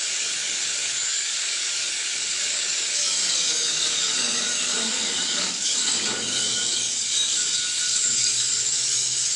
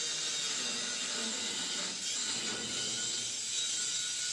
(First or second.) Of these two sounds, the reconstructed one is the first